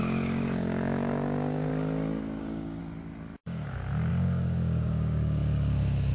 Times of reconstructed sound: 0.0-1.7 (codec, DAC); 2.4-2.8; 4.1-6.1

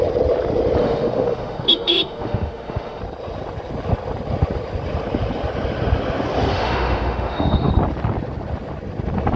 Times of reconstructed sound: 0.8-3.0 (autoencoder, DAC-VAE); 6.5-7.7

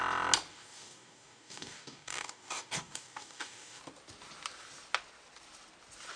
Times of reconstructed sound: 0.5-3.8 (codec, DAC)

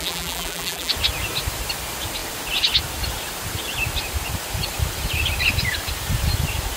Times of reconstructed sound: 0.0-0.9 (vocoder, BigVGAN v2)